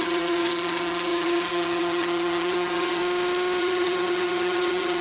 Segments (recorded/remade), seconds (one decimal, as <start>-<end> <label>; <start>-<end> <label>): 0.0-3.0 remade; 3.0-3.6 recorded; 3.6-5.0 remade